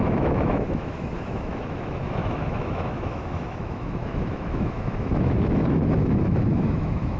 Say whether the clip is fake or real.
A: fake